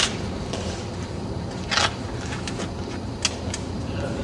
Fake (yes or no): no